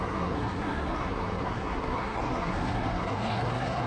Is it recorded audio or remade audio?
remade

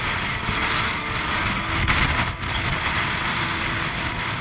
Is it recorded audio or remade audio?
recorded